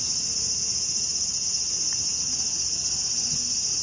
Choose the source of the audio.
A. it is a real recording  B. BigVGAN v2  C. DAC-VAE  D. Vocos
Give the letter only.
A